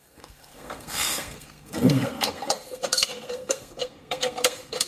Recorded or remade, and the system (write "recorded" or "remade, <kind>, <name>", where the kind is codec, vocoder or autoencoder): remade, codec, SNAC